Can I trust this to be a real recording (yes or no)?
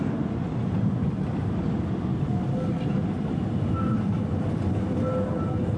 yes